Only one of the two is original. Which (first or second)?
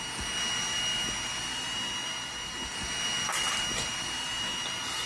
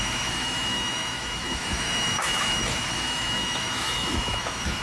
first